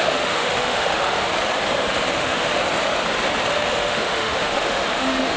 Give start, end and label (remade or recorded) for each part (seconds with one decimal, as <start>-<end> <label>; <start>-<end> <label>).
0.0-1.3 remade; 1.3-2.1 recorded; 2.1-2.6 remade; 2.6-3.5 recorded; 3.5-5.4 remade